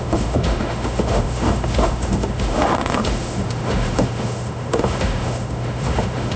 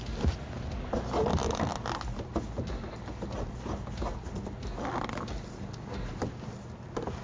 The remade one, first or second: first